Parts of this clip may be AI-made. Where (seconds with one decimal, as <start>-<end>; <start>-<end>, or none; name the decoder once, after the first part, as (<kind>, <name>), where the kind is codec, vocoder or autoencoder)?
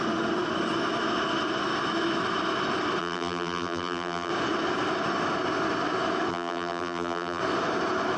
3.0-4.3 (vocoder, BigVGAN v2); 6.3-7.4